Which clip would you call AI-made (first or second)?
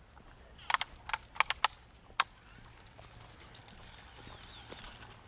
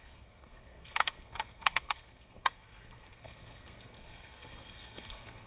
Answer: second